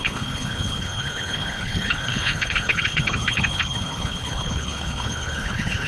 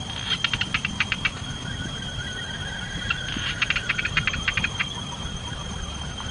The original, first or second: second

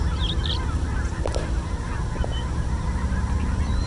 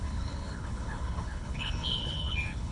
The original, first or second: first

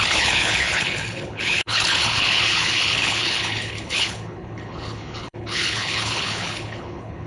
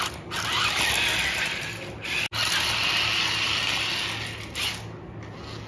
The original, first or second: second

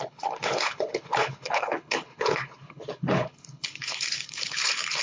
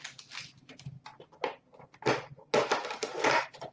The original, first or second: second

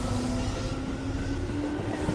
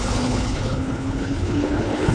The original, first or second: first